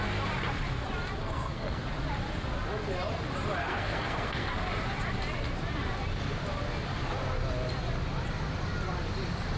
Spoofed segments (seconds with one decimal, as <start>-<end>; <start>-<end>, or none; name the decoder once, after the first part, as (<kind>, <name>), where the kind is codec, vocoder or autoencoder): 1.2-1.8 (codec, SNAC); 3.6-4.5